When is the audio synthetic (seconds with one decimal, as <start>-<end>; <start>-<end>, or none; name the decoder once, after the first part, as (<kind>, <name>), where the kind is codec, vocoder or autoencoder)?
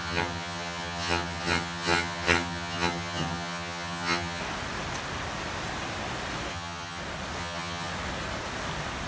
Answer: 0.0-4.4 (vocoder, HiFi-GAN); 6.5-7.0; 7.4-7.9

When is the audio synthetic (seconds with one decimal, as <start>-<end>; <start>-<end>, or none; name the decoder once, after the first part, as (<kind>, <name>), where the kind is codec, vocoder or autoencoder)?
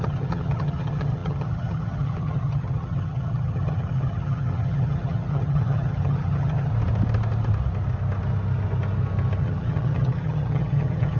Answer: 0.0-6.7 (vocoder, HiFi-GAN); 9.4-11.2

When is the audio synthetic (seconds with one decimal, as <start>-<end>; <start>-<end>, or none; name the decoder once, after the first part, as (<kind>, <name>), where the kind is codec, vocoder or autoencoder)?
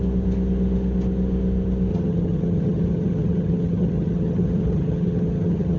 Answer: 1.9-5.8 (vocoder, HiFi-GAN)